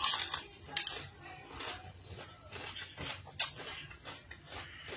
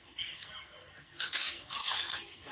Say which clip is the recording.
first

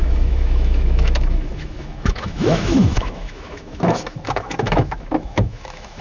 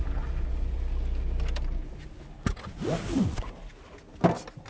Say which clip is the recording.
second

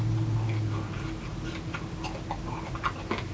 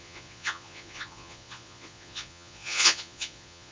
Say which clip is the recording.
first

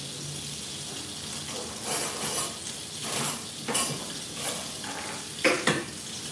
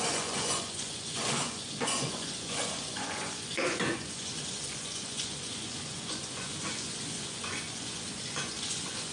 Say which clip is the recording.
first